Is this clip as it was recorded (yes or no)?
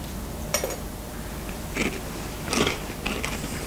yes